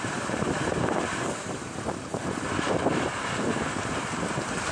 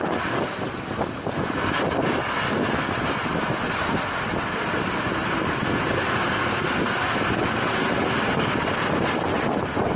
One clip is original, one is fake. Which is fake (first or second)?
first